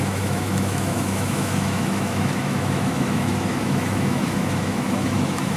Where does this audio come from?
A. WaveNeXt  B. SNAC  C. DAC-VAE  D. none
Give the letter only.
C